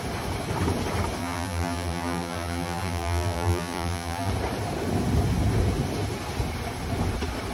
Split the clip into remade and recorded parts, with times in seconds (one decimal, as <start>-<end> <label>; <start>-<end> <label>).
0.0-1.2 recorded; 1.2-4.3 remade; 4.3-7.5 recorded